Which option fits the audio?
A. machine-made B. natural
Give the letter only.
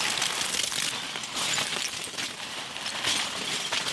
B